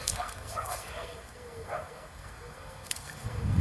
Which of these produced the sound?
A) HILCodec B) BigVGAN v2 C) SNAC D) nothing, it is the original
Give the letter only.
C